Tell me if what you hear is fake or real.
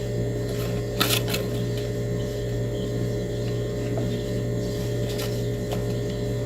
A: real